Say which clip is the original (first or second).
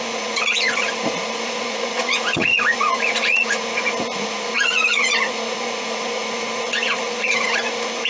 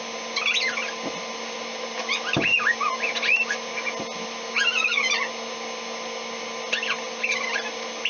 second